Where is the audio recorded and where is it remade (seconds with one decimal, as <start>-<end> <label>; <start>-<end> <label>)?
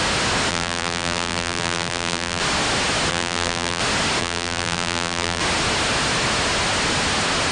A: 0.0-0.5 recorded; 0.5-2.4 remade; 2.4-3.1 recorded; 3.1-3.8 remade; 3.8-4.2 recorded; 4.2-5.4 remade; 5.4-7.5 recorded